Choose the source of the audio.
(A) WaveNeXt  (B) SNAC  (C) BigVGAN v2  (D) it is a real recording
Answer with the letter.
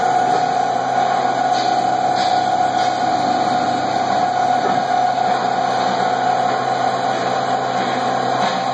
D